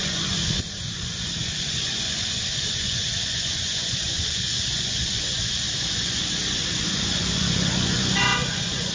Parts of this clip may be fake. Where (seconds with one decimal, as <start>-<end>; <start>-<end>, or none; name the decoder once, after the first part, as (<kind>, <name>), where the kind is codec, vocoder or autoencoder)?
0.0-8.9 (vocoder, Vocos)